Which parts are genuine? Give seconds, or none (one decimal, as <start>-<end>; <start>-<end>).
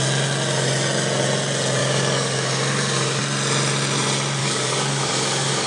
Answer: 0.0-1.8; 3.2-4.4